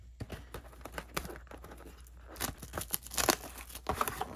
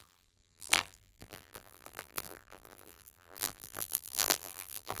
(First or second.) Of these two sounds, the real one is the first